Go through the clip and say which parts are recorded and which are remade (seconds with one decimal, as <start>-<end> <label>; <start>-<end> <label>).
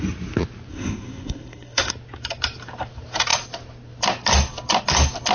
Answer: 0.0-0.7 recorded; 0.7-1.9 remade; 1.9-5.3 recorded